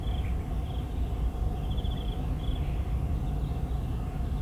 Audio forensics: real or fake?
real